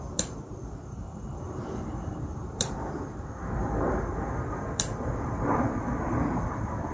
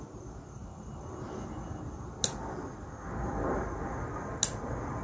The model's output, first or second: first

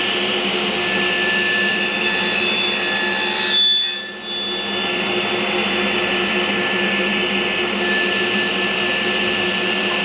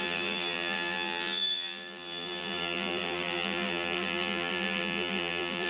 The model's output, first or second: second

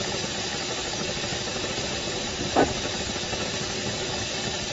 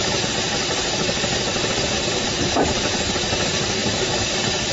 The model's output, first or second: second